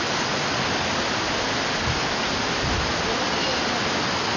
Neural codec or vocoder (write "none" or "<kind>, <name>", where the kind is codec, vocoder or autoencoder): none